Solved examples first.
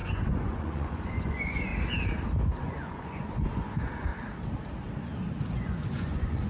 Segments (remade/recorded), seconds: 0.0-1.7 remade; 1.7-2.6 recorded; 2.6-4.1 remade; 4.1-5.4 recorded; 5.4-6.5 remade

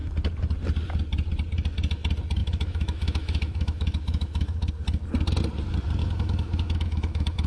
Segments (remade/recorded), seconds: 0.0-2.4 recorded; 2.4-4.7 remade; 4.7-6.0 recorded; 6.0-7.5 remade

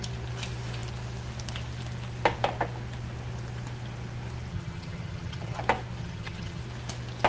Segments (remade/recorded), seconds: 0.0-4.5 recorded; 4.5-5.6 remade; 5.6-6.0 recorded; 6.0-6.6 remade; 6.6-7.3 recorded

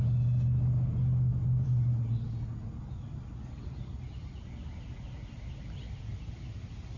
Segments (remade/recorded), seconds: 0.0-7.0 recorded